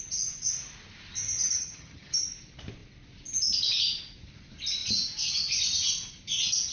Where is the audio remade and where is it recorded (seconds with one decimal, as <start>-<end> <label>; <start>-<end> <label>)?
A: 0.0-1.4 recorded; 1.4-2.2 remade; 2.2-6.7 recorded